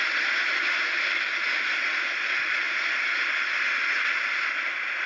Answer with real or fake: real